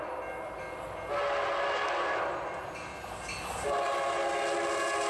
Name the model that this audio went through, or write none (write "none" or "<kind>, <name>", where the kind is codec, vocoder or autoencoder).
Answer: none